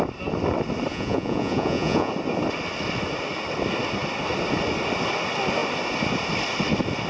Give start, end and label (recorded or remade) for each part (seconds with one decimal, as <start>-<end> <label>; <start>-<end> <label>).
0.0-0.9 recorded; 0.9-2.1 remade; 2.1-7.1 recorded